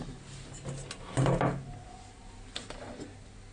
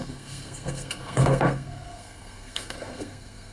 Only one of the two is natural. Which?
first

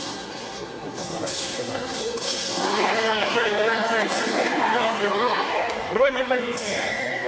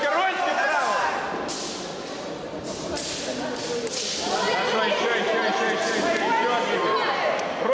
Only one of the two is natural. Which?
second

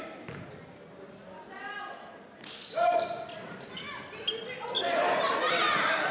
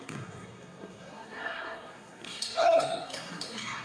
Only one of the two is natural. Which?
first